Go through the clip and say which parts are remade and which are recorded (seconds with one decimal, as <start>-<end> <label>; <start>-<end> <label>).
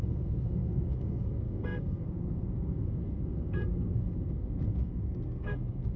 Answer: 0.0-6.0 remade